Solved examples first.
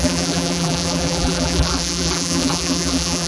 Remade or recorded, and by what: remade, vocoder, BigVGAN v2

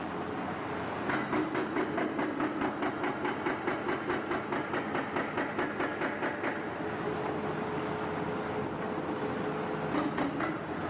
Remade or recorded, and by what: recorded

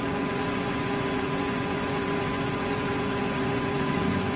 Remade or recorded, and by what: remade, vocoder, Vocos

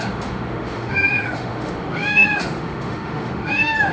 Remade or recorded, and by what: remade, autoencoder, DAC-VAE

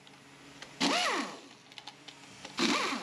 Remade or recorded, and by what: recorded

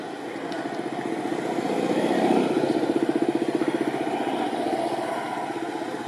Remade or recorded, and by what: recorded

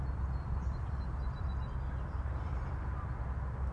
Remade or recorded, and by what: recorded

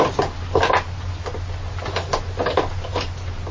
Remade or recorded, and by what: recorded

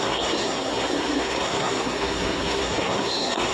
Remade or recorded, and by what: remade, codec, SNAC